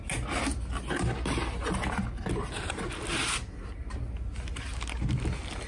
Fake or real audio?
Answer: real